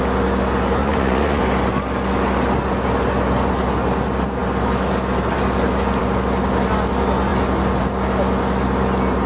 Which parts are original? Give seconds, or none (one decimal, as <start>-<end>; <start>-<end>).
0.0-0.8; 1.4-9.3